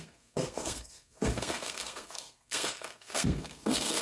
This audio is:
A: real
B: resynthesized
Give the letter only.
B